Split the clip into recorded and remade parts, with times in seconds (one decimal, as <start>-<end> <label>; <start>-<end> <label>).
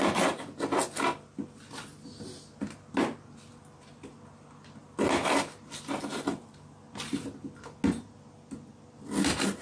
0.0-9.6 recorded